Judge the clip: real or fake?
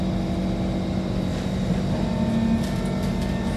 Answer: real